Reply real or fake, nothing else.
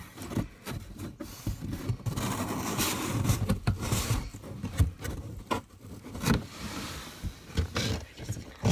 fake